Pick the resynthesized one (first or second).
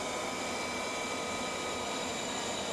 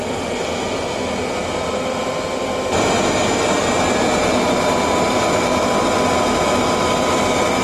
first